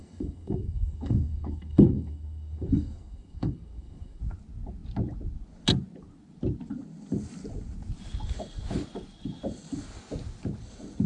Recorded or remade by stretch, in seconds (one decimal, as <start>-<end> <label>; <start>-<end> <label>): 0.0-4.2 remade; 4.2-11.1 recorded